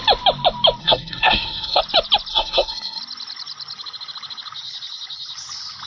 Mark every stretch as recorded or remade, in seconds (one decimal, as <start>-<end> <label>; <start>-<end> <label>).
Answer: 0.0-0.8 recorded; 0.8-1.8 remade; 1.8-2.3 recorded; 2.3-3.0 remade; 3.0-5.9 recorded